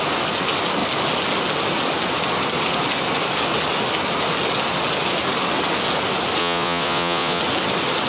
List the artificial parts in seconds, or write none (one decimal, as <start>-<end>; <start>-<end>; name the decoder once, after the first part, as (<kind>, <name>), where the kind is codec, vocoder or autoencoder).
6.4-7.4 (vocoder, Vocos)